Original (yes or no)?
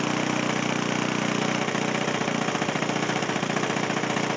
yes